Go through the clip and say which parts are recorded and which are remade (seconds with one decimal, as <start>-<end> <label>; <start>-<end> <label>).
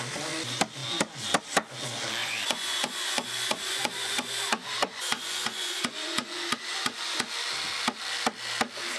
0.0-2.2 recorded; 2.2-7.3 remade; 7.3-9.0 recorded